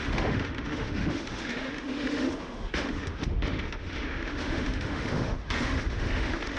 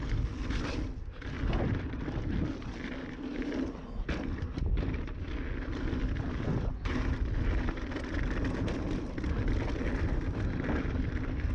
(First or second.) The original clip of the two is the second